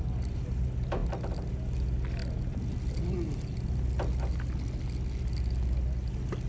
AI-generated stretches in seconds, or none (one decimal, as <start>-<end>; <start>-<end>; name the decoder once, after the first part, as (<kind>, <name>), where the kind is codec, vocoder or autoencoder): none